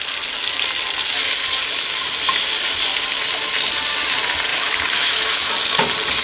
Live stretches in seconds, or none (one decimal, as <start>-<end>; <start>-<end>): 0.0-4.5; 5.5-6.2